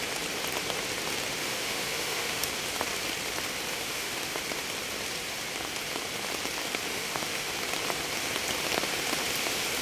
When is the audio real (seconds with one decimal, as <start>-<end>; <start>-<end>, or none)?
0.0-1.4; 2.5-3.7; 4.4-6.9; 7.5-9.8